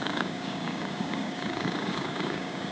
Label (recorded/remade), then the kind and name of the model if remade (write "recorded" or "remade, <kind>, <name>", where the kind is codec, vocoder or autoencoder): remade, codec, DAC